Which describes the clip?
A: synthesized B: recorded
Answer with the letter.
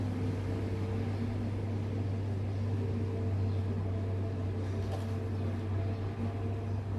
B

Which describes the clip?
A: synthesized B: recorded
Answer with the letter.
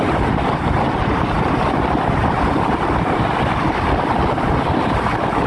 B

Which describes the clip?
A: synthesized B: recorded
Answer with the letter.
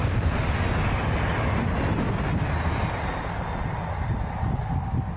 B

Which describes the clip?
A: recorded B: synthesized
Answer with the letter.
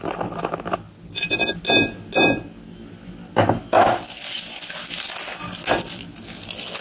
A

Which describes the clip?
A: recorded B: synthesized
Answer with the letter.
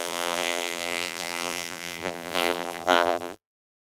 B